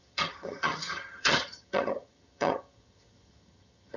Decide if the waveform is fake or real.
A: fake